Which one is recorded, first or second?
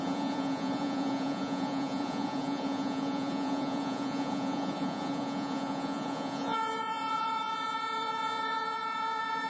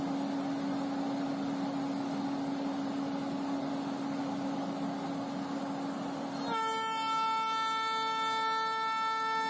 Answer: second